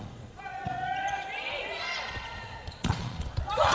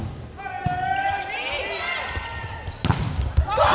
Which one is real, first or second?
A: second